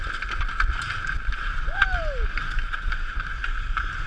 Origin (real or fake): real